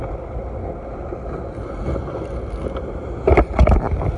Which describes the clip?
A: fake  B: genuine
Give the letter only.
B